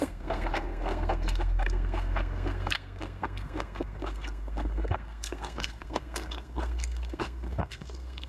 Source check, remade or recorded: remade